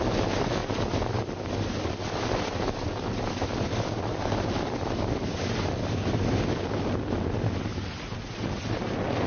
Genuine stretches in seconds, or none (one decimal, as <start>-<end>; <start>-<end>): 0.0-9.3